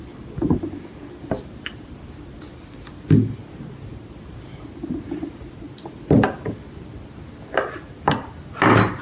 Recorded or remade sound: recorded